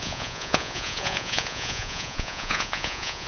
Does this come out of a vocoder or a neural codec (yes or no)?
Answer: yes